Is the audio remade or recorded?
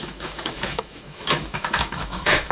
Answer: remade